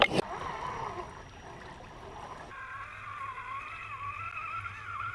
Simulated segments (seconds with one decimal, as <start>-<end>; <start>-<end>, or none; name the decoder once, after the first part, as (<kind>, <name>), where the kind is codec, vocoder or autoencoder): none